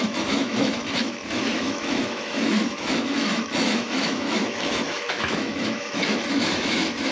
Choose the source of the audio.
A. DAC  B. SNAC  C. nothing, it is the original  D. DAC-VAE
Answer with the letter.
D